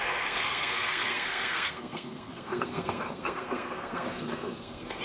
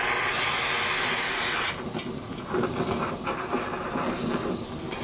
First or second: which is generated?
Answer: first